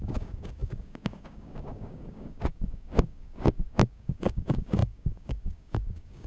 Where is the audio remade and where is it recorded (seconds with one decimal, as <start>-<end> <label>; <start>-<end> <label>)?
0.0-6.3 remade